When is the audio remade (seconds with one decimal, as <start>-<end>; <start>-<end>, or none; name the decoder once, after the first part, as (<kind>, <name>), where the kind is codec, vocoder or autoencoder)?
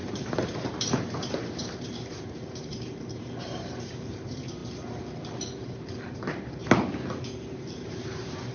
0.0-4.6 (vocoder, BigVGAN v2); 6.1-6.6; 7.5-8.5